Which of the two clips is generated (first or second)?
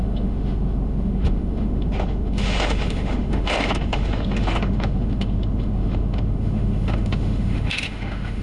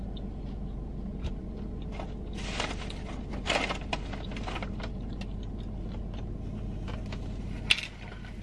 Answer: first